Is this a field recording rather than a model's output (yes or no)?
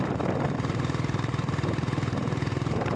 no